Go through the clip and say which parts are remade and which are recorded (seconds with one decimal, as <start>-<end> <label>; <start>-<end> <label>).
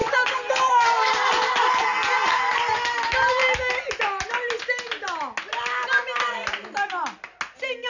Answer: 0.0-1.1 remade; 1.1-7.9 recorded